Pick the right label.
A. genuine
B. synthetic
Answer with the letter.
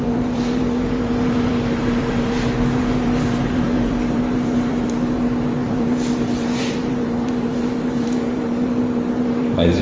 B